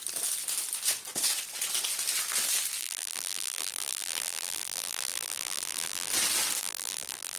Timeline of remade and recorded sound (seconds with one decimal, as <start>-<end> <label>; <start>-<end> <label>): 0.0-2.8 recorded; 2.8-6.1 remade; 6.1-6.6 recorded; 6.6-7.4 remade